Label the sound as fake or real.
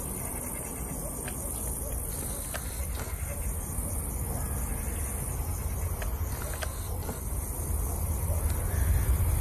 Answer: real